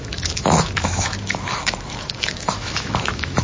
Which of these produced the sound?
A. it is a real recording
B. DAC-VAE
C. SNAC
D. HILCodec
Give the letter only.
B